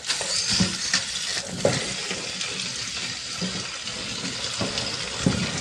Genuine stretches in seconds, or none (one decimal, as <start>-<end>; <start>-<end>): 0.0-5.6